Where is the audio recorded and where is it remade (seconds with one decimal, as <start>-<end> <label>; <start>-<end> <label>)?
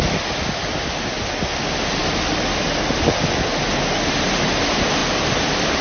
0.0-5.8 recorded